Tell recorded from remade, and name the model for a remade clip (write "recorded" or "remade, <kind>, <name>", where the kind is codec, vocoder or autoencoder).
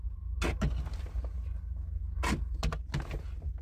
recorded